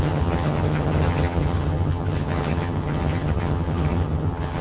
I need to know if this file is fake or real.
fake